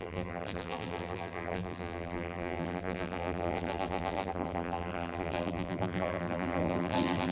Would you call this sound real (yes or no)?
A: no